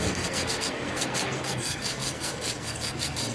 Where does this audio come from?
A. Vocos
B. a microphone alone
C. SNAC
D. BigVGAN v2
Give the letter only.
C